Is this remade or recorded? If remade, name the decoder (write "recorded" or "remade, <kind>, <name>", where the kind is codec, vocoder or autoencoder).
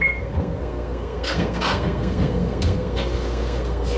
remade, codec, SNAC